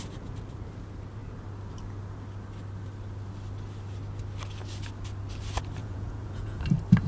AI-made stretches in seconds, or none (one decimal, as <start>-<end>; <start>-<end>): 5.8-6.6